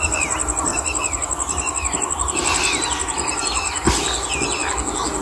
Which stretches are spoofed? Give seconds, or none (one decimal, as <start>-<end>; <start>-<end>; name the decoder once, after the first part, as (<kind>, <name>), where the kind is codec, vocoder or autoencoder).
none